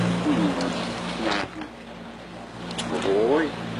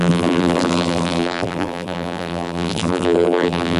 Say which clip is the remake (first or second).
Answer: second